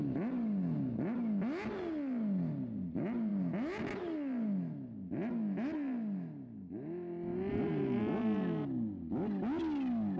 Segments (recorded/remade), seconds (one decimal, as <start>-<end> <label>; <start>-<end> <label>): 0.0-7.5 recorded; 7.5-8.0 remade; 8.0-10.2 recorded